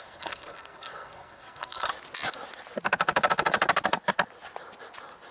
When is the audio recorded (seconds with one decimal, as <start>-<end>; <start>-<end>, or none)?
1.9-5.3